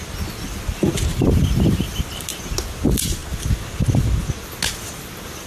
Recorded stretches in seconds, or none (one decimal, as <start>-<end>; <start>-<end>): 0.0-1.1; 2.0-5.5